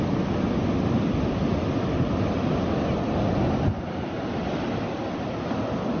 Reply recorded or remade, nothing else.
recorded